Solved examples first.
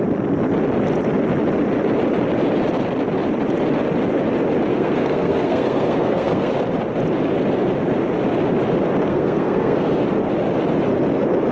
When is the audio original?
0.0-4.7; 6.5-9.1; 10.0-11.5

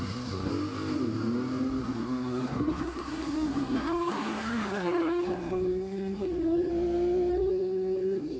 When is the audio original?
0.5-1.8; 6.7-7.3

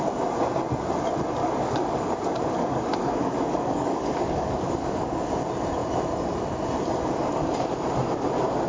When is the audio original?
0.0-1.4; 5.3-8.7

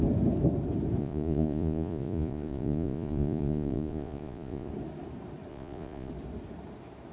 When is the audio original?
0.0-1.0; 4.7-5.5; 6.1-7.1

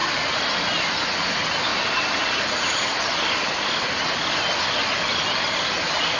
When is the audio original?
0.0-6.2

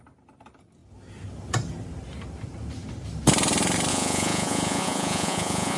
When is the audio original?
0.0-3.9